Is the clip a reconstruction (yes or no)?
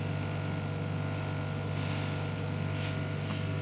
no